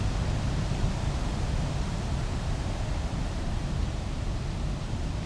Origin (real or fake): real